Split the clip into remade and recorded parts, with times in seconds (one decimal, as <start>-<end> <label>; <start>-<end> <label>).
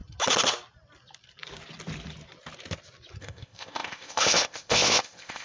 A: 0.0-3.2 recorded; 3.2-5.4 remade